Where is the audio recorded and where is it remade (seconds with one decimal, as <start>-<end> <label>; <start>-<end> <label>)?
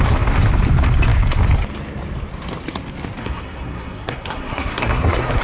0.0-3.2 recorded; 3.2-5.4 remade